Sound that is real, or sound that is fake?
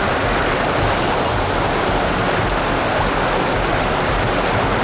real